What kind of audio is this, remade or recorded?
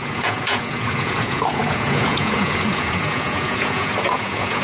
remade